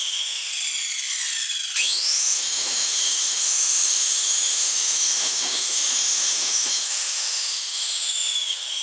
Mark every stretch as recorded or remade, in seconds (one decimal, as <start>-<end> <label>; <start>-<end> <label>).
0.0-0.5 remade; 0.5-1.8 recorded; 1.8-8.8 remade